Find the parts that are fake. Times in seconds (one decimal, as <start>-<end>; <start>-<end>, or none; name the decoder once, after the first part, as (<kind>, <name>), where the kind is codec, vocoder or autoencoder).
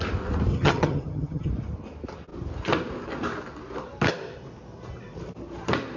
0.5-1.5 (vocoder, HiFi-GAN)